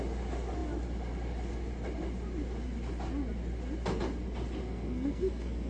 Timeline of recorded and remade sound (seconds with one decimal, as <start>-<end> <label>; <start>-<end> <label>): 0.0-4.6 recorded; 4.6-5.7 remade